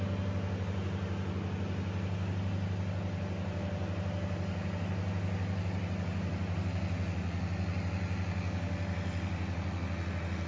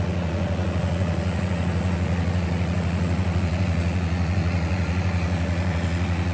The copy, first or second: second